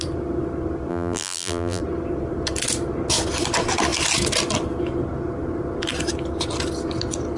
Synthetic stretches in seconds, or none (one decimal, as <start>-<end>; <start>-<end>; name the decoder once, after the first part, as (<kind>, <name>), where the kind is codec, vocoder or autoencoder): 0.9-1.8 (vocoder, BigVGAN v2)